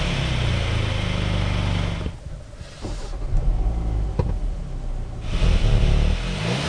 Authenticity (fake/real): real